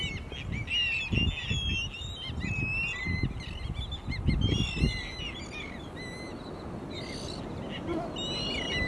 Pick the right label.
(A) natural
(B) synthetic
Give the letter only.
A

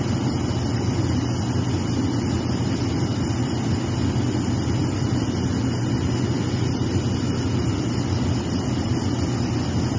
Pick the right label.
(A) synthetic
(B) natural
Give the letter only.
B